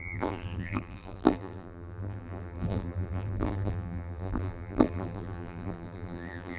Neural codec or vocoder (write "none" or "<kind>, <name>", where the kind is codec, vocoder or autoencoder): vocoder, BigVGAN v2